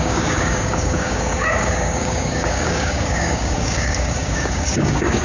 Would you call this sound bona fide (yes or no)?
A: no